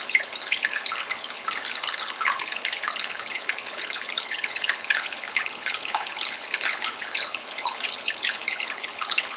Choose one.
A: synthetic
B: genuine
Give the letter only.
A